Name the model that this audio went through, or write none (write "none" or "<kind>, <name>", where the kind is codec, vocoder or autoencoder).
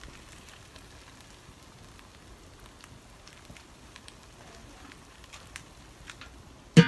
none